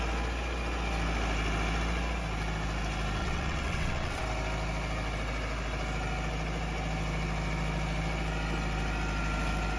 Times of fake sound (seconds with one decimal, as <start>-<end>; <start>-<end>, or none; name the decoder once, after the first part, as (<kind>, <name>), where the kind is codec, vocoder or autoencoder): 3.2-4.2 (vocoder, WaveNeXt)